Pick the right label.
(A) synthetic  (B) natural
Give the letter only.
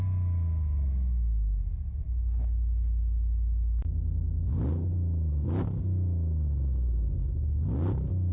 B